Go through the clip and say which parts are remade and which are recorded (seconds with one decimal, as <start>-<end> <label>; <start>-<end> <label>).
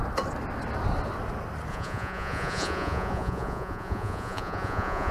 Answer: 0.0-1.7 recorded; 1.7-5.1 remade